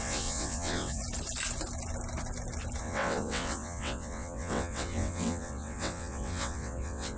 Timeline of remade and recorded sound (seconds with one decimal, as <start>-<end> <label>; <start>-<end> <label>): 0.0-1.0 remade; 1.0-2.8 recorded; 2.8-7.2 remade